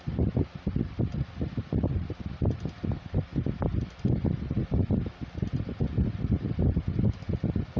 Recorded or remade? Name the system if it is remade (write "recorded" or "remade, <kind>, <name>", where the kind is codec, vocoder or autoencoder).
recorded